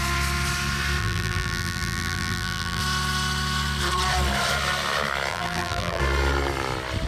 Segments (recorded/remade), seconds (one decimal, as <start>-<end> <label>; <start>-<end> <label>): 0.0-1.0 recorded; 1.0-2.8 remade; 2.8-5.3 recorded; 5.3-6.0 remade; 6.0-7.1 recorded